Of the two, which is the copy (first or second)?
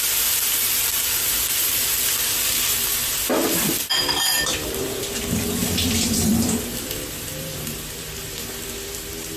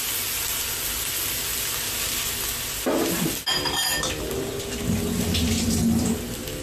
first